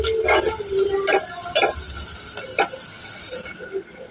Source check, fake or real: real